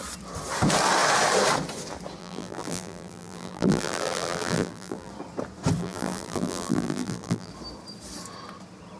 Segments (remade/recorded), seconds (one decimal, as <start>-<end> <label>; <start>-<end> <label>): 0.0-2.2 recorded; 2.2-5.1 remade; 5.1-5.8 recorded; 5.8-7.5 remade; 7.5-9.0 recorded